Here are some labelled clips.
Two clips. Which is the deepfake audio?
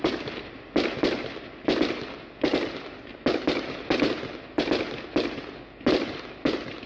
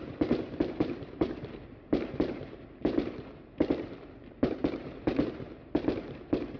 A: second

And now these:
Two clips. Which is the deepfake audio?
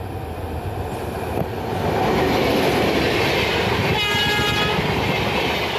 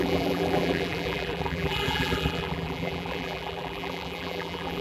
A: second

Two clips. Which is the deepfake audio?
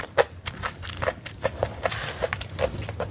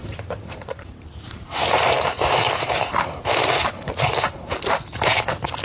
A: second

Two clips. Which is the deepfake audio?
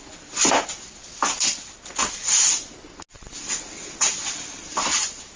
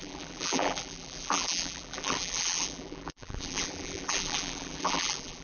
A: second